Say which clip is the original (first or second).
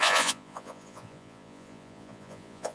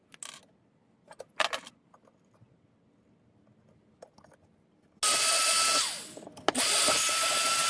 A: second